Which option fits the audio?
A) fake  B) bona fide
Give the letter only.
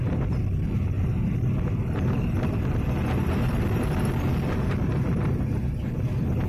B